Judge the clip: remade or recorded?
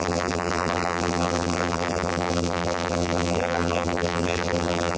remade